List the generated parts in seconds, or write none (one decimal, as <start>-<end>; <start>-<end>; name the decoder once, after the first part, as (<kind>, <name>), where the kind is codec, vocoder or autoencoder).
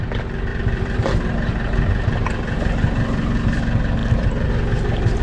0.5-3.6 (vocoder, BigVGAN v2); 4.0-4.5